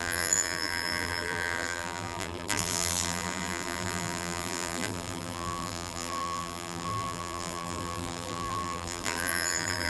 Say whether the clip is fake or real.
fake